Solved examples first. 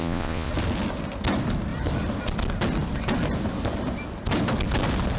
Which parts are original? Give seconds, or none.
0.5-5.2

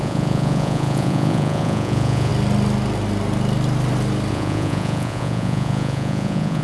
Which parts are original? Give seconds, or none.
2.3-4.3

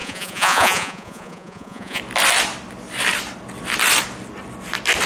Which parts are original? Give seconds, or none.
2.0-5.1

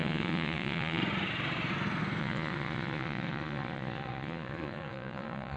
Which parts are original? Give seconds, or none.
1.0-2.2